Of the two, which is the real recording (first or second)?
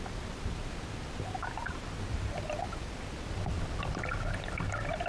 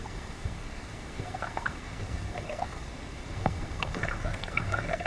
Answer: first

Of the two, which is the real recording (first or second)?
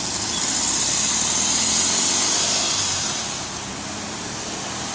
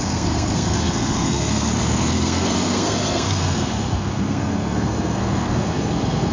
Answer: first